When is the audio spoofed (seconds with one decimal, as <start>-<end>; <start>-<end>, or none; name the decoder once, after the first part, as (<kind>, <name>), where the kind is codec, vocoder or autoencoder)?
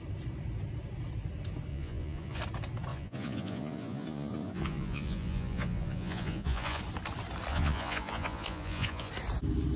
1.7-2.4 (vocoder, Vocos); 2.9-6.8; 7.5-9.1